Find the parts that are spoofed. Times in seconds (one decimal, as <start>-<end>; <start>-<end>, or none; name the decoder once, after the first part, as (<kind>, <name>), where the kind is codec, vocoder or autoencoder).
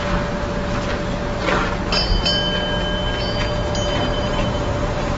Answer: 4.1-5.2 (vocoder, BigVGAN v2)